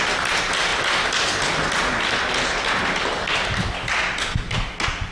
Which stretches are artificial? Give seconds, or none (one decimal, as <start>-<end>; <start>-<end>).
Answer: none